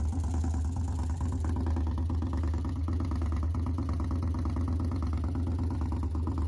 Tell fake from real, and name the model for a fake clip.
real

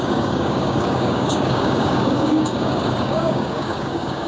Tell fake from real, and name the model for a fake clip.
fake, codec, DAC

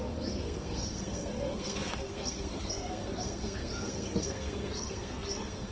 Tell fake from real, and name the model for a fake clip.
fake, codec, SNAC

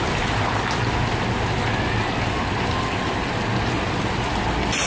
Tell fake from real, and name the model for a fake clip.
real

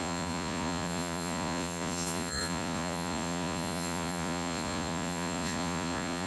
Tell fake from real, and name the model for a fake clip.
fake, vocoder, Vocos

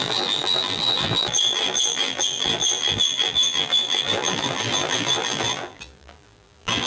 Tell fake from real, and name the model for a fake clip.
fake, vocoder, BigVGAN v2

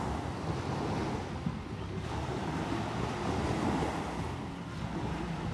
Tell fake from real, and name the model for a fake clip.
real